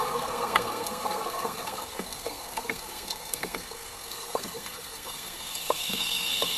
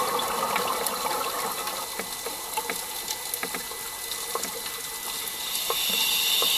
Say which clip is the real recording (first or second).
second